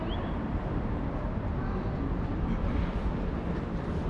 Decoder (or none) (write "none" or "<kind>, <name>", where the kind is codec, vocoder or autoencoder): none